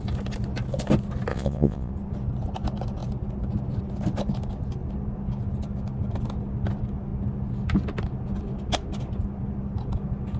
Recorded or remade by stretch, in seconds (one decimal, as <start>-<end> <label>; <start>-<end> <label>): 0.0-1.3 recorded; 1.3-1.9 remade; 1.9-10.4 recorded